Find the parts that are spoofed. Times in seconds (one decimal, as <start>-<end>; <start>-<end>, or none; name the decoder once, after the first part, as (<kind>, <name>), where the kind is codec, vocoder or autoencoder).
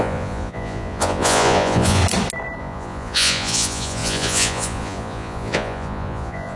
0.0-2.0 (vocoder, Vocos); 2.6-6.6